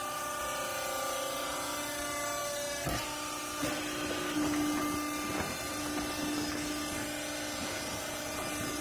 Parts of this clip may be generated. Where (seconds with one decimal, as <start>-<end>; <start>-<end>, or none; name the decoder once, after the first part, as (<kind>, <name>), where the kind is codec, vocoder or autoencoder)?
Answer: none